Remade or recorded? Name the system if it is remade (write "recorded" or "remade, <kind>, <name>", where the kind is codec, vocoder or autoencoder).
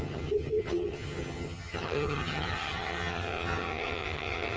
remade, vocoder, HiFi-GAN